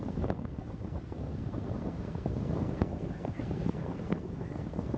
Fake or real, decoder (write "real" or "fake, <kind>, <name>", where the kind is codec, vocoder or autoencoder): fake, codec, SNAC